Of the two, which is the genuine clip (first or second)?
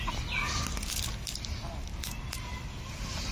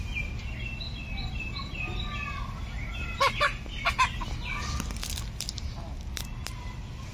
second